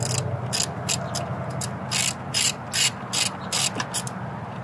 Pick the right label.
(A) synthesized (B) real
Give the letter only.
B